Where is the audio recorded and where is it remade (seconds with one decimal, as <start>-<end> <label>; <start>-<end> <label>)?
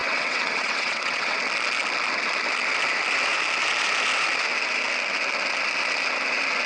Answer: 0.0-1.4 remade; 1.4-6.7 recorded